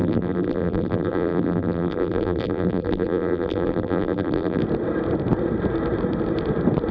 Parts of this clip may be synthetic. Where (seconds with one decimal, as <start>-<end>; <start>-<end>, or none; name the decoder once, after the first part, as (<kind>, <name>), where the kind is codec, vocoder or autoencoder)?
0.0-4.6 (vocoder, BigVGAN v2)